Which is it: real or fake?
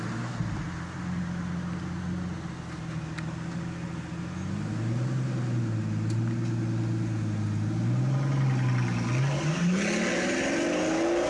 real